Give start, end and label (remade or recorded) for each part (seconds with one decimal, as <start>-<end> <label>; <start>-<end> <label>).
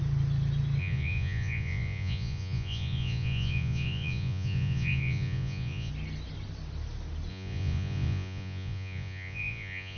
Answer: 0.0-0.8 recorded; 0.8-5.9 remade; 5.9-7.3 recorded; 7.3-10.0 remade